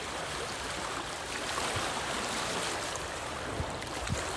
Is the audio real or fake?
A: fake